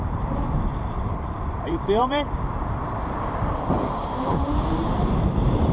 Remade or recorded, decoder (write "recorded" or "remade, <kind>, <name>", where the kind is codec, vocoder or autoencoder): remade, vocoder, BigVGAN v2